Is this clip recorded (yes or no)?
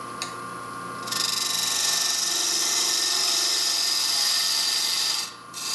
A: yes